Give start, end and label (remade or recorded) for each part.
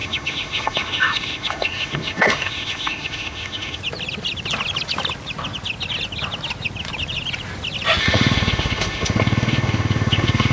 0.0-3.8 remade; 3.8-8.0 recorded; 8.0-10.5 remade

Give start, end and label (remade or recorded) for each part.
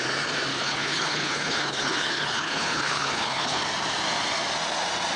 0.0-0.5 recorded; 0.5-3.6 remade; 3.6-5.2 recorded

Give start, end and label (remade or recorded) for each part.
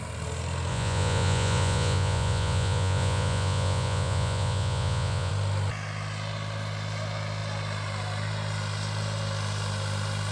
0.0-0.7 recorded; 0.7-5.3 remade; 5.3-10.3 recorded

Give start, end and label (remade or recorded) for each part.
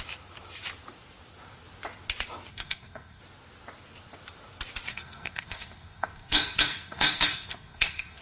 0.0-2.5 recorded; 2.5-3.2 remade; 3.2-4.9 recorded; 4.9-8.2 remade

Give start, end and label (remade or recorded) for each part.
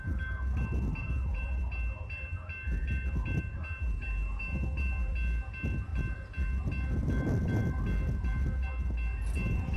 0.0-1.0 recorded; 1.0-1.6 remade; 1.6-9.8 recorded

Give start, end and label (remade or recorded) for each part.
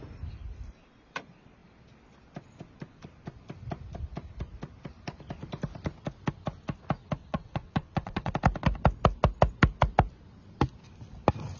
0.0-7.2 recorded; 7.2-8.3 remade; 8.3-11.6 recorded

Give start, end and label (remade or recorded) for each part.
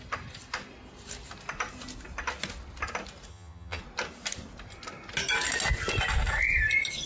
0.0-3.3 recorded; 3.3-3.8 remade; 3.8-7.1 recorded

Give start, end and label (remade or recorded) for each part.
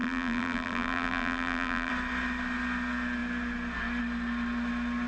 0.0-1.9 remade; 1.9-5.1 recorded